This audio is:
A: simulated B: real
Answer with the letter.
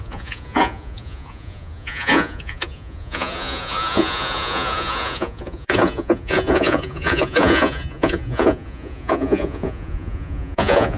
A